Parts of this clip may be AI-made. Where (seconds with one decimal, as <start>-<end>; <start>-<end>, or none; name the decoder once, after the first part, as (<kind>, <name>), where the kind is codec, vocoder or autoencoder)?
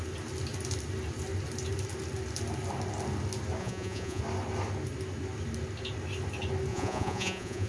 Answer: 3.6-4.2 (vocoder, Vocos); 6.7-7.7